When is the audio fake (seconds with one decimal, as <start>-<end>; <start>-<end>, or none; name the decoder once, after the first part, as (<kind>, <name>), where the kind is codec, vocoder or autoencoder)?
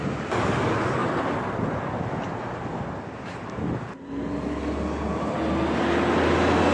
none